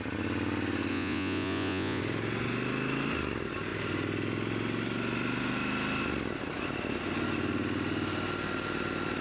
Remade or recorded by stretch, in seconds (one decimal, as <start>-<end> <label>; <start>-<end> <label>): 0.0-0.9 recorded; 0.9-2.0 remade; 2.0-9.2 recorded